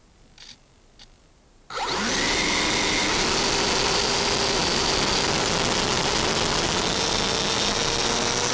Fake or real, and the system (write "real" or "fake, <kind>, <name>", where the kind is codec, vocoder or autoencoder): real